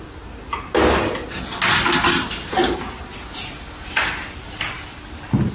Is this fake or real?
real